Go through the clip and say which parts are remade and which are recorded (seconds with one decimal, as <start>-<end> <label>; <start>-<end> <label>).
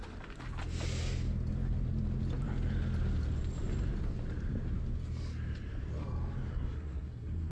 0.0-6.5 recorded; 6.5-7.5 remade